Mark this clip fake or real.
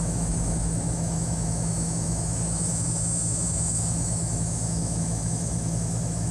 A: fake